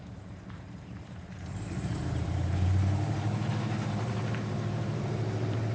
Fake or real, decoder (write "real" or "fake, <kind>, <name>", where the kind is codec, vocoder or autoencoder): fake, vocoder, BigVGAN v2